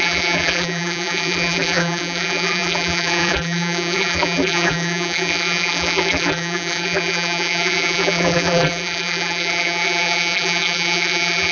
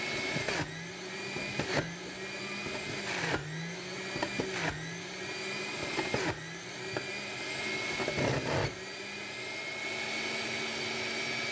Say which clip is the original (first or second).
second